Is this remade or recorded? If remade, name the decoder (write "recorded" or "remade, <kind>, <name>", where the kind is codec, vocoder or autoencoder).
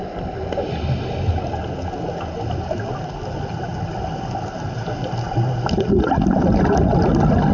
recorded